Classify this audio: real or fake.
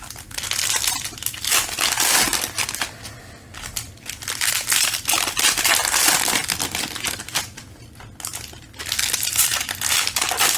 real